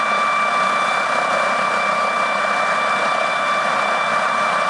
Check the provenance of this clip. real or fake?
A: real